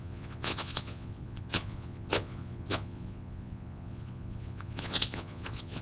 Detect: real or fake fake